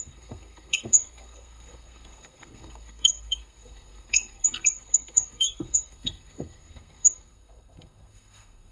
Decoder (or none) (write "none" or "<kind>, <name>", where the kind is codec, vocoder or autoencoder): codec, SNAC